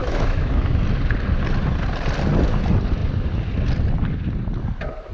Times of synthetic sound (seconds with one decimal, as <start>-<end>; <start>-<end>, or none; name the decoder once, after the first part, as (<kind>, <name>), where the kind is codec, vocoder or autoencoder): 0.0-0.8 (autoencoder, DAC-VAE)